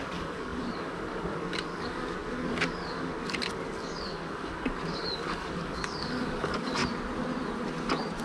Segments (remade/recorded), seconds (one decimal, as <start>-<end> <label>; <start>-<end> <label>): 0.0-6.8 remade; 6.8-8.2 recorded

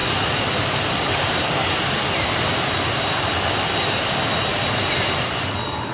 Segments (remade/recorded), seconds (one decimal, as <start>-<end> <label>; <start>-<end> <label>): 0.0-3.5 remade; 3.5-4.5 recorded; 4.5-5.9 remade